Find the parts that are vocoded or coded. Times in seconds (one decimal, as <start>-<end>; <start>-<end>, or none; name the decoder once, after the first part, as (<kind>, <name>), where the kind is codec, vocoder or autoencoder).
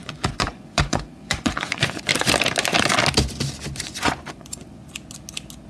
0.0-2.1 (vocoder, Vocos); 3.8-4.8